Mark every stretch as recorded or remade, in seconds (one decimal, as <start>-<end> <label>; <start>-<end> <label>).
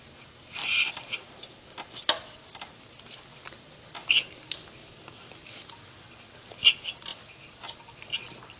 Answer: 0.0-4.8 recorded; 4.8-6.1 remade; 6.1-8.6 recorded